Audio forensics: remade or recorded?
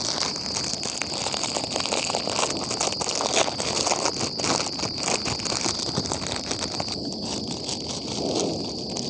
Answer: recorded